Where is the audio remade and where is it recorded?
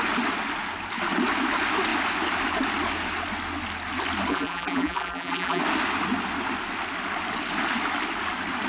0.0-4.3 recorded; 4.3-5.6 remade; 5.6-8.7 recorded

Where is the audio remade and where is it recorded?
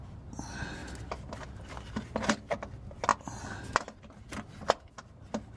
0.0-5.6 recorded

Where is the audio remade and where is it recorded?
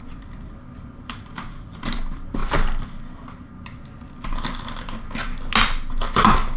0.0-2.4 remade; 2.4-6.6 recorded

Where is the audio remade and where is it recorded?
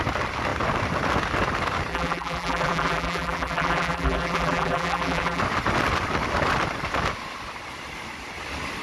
0.0-1.9 recorded; 1.9-5.4 remade; 5.4-8.8 recorded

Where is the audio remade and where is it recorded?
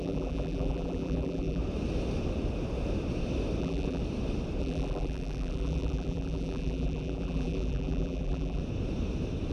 0.0-1.6 remade; 1.6-3.6 recorded; 3.6-4.0 remade; 4.0-4.6 recorded; 4.6-8.6 remade; 8.6-9.5 recorded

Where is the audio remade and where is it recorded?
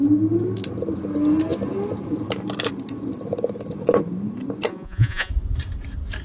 0.0-4.7 recorded; 4.7-5.3 remade; 5.3-6.2 recorded